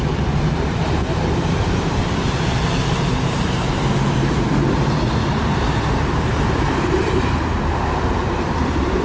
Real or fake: fake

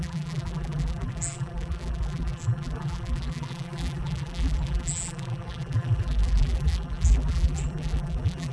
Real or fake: fake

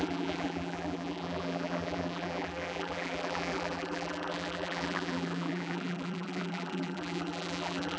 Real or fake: fake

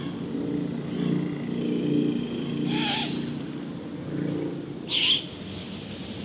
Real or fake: real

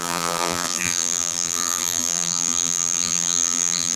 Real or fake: fake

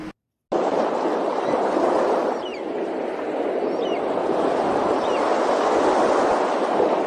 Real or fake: real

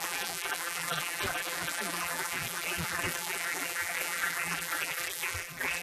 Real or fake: fake